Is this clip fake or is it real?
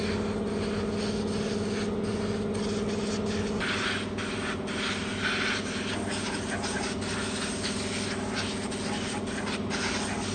real